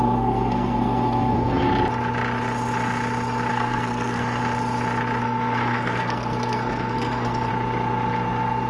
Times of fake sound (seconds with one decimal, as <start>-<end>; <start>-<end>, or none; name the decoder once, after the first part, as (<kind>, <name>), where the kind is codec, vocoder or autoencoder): 0.0-1.7 (codec, SNAC); 3.5-4.4; 5.2-7.5

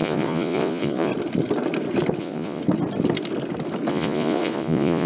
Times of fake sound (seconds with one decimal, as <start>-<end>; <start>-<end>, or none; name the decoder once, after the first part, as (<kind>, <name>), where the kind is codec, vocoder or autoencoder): 0.0-1.1 (vocoder, Vocos); 2.2-2.6; 3.9-5.1

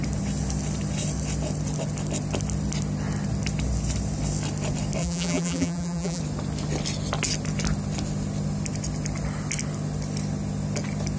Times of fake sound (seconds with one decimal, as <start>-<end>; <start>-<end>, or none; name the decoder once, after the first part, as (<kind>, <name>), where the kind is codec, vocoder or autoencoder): 5.0-6.2 (vocoder, BigVGAN v2)

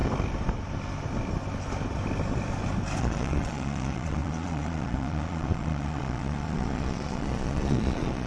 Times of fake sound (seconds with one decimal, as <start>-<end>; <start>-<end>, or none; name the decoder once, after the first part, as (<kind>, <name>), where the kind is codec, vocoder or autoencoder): 3.0-8.3 (vocoder, Vocos)

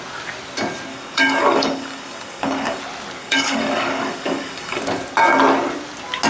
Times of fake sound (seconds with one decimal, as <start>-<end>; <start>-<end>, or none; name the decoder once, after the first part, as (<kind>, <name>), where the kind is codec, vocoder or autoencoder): 0.9-2.8 (codec, DAC); 3.2-4.8